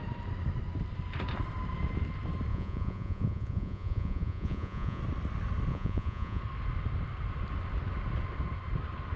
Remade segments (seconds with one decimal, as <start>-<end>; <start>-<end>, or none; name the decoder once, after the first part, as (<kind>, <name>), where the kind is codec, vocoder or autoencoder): 2.5-5.0 (vocoder, Vocos); 5.7-6.4